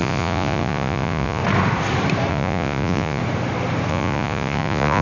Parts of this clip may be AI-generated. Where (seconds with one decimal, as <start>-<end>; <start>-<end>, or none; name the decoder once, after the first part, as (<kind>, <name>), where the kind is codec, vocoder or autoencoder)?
0.0-1.4 (vocoder, Vocos); 2.3-3.2; 3.9-5.0